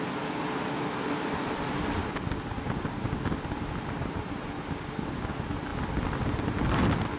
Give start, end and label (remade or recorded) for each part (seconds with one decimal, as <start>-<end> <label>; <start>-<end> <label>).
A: 0.0-7.2 recorded